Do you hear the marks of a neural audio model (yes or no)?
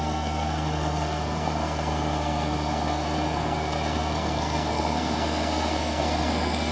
yes